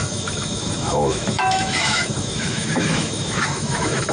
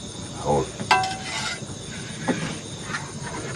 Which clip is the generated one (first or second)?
first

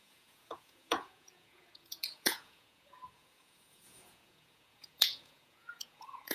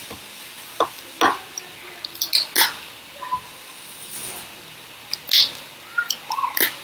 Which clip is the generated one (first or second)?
first